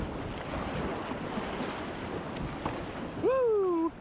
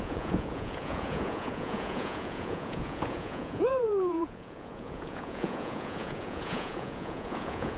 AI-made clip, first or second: second